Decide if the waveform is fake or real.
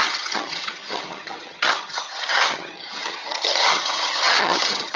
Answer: fake